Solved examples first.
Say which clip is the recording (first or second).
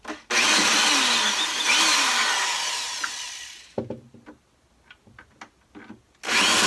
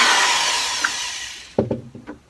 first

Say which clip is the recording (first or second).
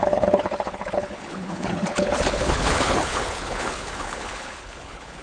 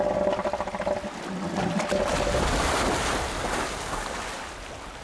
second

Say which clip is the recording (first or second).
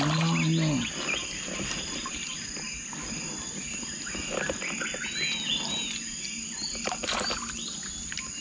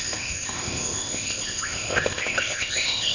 first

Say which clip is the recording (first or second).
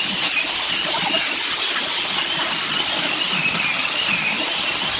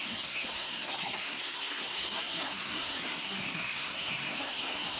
first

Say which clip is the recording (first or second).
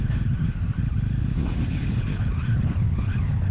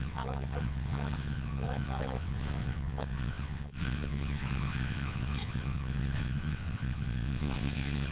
first